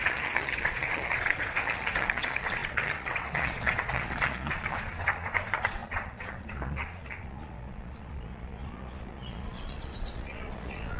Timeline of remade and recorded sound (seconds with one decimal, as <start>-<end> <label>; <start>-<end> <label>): 0.0-11.0 remade